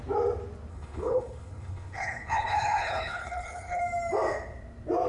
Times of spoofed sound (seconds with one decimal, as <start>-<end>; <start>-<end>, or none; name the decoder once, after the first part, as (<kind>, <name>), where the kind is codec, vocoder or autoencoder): 0.7-3.8 (codec, HILCodec)